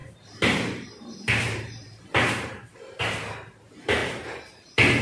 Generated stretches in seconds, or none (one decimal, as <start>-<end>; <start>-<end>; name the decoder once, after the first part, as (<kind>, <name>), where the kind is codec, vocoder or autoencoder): 0.0-5.0 (vocoder, BigVGAN v2)